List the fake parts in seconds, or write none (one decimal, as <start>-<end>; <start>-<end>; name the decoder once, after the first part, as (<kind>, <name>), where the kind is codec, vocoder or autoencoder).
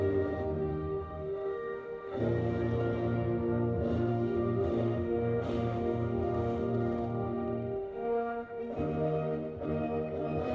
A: 0.7-2.2 (autoencoder, DAC-VAE); 4.1-8.6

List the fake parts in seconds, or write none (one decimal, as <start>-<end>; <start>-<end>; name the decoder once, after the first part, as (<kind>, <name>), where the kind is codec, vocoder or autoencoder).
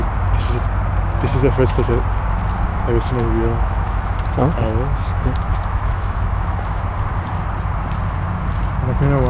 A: 1.3-1.9 (autoencoder, DAC-VAE); 2.7-6.8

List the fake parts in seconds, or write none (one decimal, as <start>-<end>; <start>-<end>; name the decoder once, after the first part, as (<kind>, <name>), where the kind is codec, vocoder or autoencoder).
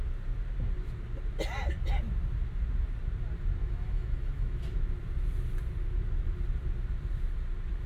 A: 3.6-4.6 (autoencoder, DAC-VAE)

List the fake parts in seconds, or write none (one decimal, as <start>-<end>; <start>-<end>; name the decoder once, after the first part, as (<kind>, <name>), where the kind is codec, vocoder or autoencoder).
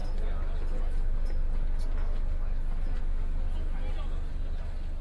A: none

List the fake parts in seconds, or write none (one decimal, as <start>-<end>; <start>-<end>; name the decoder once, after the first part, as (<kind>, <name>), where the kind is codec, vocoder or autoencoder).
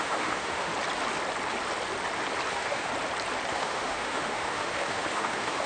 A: 0.0-0.7 (autoencoder, DAC-VAE); 2.5-2.9; 3.5-5.7